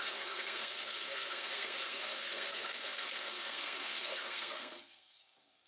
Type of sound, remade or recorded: remade